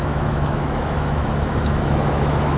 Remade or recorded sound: remade